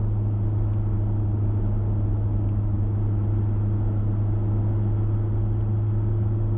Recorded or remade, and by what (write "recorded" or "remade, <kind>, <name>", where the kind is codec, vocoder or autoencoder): recorded